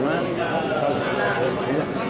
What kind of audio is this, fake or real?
fake